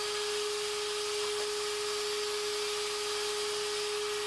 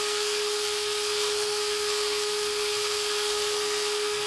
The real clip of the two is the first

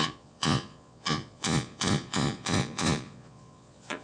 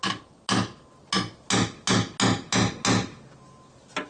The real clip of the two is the second